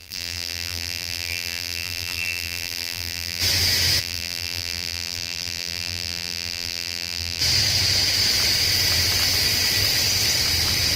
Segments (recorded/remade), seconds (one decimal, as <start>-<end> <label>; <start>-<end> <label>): 0.0-3.4 remade; 3.4-4.0 recorded; 4.0-7.4 remade; 7.4-11.0 recorded